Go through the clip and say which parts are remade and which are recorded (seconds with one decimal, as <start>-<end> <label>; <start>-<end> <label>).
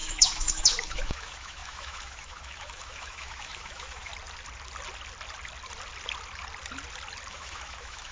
0.0-4.1 remade; 4.1-7.3 recorded; 7.3-8.1 remade